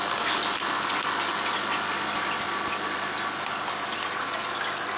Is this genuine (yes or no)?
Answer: yes